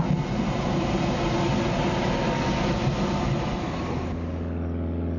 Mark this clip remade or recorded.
recorded